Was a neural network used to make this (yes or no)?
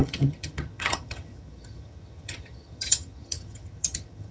yes